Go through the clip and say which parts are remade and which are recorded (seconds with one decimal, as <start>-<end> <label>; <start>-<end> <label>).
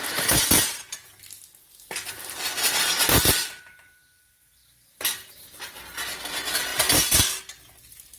0.0-8.2 recorded